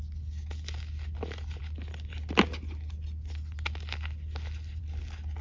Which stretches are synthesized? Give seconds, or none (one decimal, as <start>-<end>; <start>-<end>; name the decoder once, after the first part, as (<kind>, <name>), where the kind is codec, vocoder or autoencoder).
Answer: none